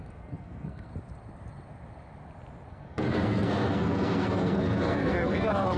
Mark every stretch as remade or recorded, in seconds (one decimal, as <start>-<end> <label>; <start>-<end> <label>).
0.0-0.9 remade; 0.9-2.7 recorded; 2.7-5.8 remade